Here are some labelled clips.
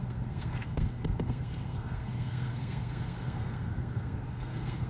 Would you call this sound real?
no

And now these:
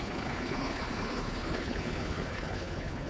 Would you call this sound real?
no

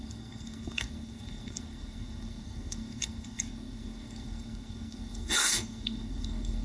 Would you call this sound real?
no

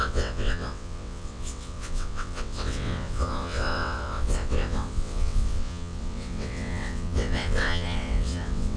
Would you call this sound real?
no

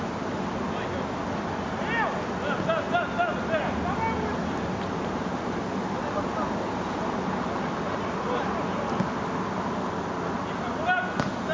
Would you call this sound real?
yes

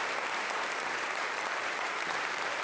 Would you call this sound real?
no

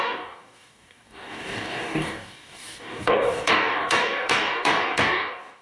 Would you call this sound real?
no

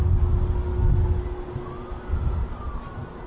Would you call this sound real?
yes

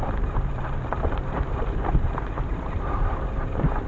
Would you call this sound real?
no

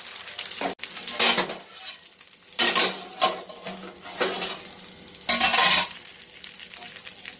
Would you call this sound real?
yes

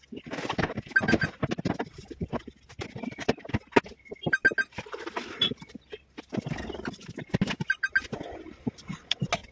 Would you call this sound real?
yes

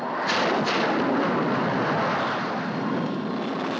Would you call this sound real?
yes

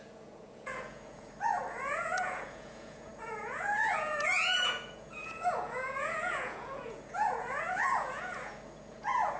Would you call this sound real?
no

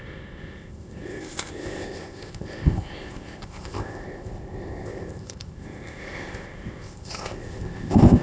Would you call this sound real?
no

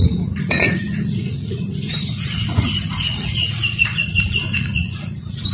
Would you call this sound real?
no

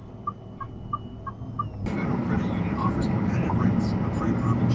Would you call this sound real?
yes